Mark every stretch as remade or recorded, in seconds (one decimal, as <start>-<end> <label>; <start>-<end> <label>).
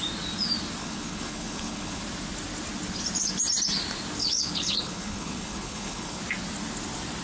0.0-0.8 recorded; 0.8-2.0 remade; 2.0-4.2 recorded; 4.2-6.2 remade; 6.2-7.2 recorded